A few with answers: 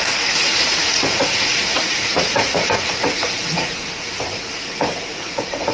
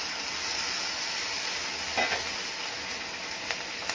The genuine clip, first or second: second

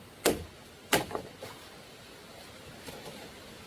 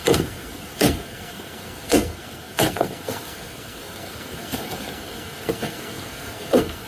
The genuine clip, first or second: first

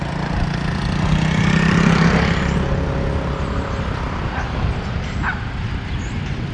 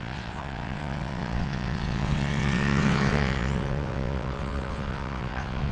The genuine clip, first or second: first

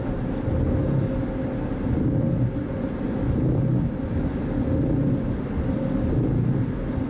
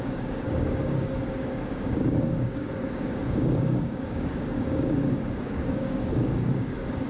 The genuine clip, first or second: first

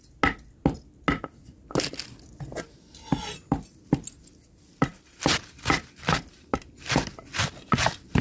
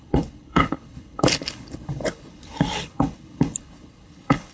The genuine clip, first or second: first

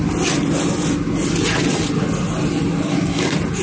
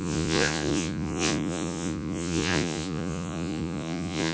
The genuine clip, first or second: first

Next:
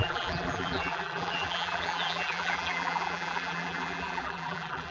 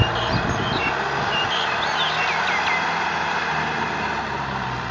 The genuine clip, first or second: second